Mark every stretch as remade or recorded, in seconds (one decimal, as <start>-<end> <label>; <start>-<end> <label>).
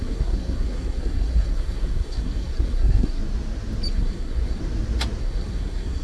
0.0-3.2 remade; 3.2-3.9 recorded; 3.9-4.6 remade; 4.6-5.2 recorded; 5.2-6.0 remade